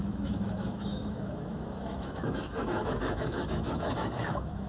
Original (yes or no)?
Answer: no